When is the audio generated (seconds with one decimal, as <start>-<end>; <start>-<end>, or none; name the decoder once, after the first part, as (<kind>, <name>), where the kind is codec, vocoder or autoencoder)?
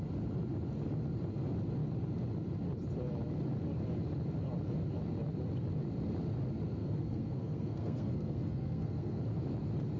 6.8-9.2 (codec, SNAC)